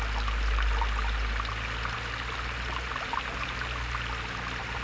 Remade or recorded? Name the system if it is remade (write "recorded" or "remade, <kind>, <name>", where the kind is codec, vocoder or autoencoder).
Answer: recorded